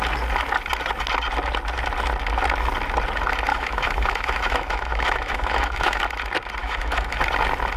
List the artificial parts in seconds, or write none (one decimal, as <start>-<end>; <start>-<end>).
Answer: 3.5-6.0; 6.6-7.2